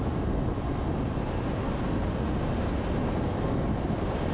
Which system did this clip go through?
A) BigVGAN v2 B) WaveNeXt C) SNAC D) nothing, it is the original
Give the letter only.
D